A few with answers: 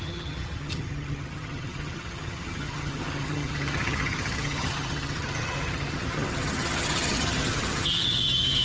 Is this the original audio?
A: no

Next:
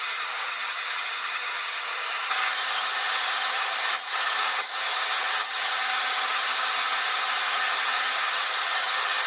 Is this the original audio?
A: no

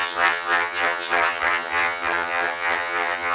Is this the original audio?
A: no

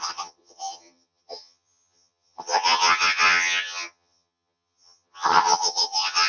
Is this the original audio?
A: no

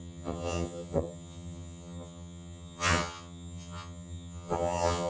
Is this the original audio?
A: no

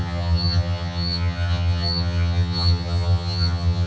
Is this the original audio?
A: no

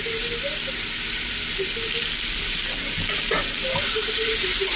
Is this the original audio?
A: yes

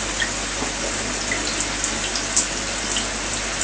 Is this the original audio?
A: yes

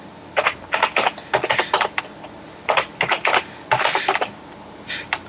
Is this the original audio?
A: yes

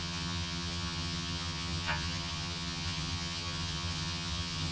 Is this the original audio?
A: no